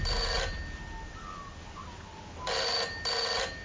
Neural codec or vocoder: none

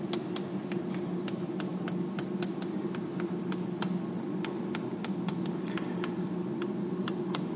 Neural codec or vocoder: none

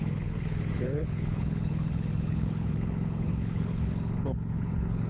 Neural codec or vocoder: codec, HILCodec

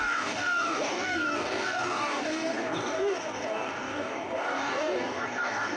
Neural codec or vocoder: codec, DAC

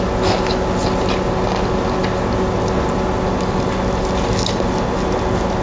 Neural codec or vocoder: none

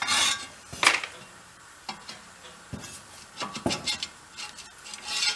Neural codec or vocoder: none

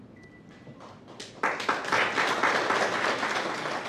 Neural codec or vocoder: none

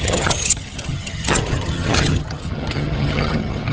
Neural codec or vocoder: vocoder, HiFi-GAN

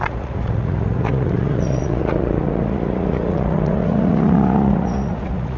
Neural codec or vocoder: vocoder, Vocos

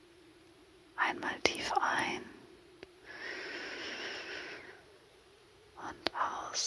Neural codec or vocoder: vocoder, BigVGAN v2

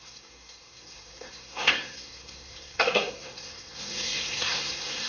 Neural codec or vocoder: codec, SNAC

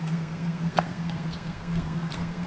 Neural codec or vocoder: codec, SNAC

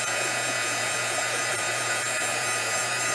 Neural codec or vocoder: vocoder, Vocos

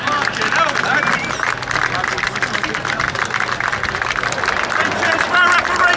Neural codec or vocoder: none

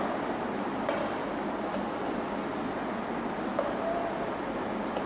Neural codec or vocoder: none